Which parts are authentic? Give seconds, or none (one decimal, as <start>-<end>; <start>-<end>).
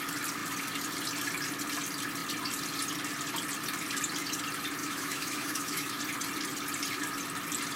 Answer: 0.0-4.8; 6.0-7.8